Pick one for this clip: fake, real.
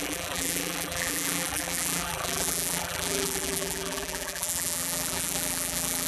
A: fake